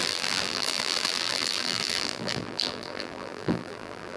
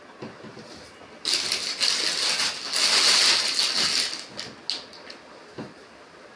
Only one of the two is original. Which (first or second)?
second